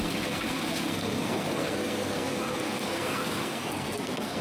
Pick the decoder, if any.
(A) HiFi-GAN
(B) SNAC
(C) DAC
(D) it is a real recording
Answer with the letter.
B